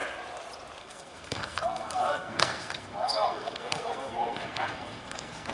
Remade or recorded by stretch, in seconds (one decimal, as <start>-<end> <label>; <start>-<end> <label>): 0.0-0.8 recorded; 0.8-5.5 remade